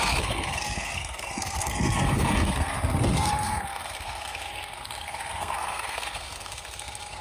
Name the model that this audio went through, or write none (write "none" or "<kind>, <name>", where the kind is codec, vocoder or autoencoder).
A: codec, SNAC